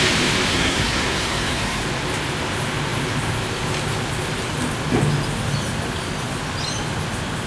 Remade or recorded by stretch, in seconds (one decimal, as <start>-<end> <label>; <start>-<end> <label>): 0.0-0.5 recorded; 0.5-1.8 remade; 1.8-7.5 recorded